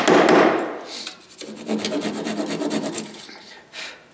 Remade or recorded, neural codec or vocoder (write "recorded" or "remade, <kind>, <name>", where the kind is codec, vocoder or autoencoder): recorded